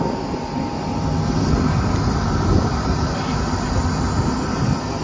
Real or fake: real